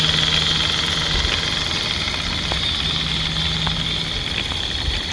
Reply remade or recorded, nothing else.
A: recorded